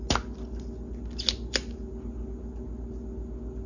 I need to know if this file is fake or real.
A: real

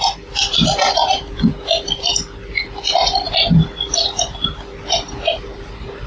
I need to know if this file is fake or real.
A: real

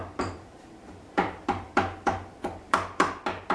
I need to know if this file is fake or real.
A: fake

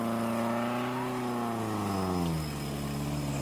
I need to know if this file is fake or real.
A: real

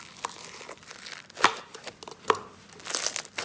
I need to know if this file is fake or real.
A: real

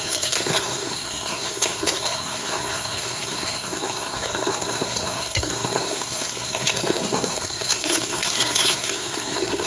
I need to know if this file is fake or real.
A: fake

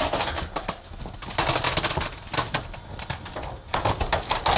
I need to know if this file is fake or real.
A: real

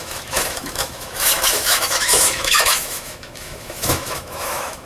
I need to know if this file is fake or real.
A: fake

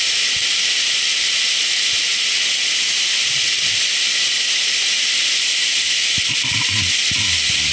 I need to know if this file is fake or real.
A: real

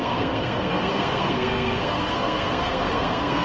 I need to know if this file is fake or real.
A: fake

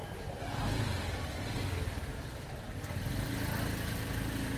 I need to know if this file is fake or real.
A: real